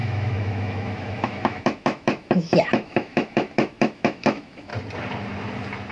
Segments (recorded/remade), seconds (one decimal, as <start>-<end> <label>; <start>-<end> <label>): 0.0-4.7 remade; 4.7-5.9 recorded